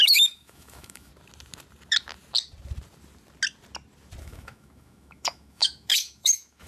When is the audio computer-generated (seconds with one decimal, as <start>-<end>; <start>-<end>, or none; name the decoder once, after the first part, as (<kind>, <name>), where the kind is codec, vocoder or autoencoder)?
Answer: 0.0-1.1 (autoencoder, DAC-VAE); 4.2-6.7